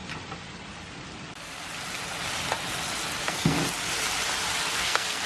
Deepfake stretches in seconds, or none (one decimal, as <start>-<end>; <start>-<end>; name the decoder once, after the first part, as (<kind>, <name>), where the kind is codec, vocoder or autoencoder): 3.2-3.6 (codec, SNAC); 4.7-5.3